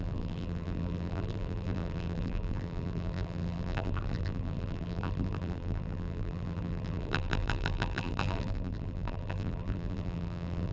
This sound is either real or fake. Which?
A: fake